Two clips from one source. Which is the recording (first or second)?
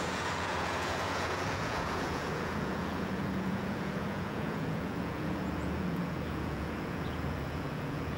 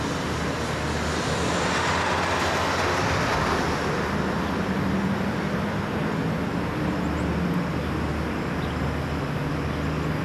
second